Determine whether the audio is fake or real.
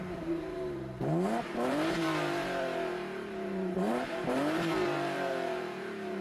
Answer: fake